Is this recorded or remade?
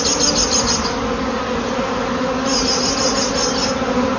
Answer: recorded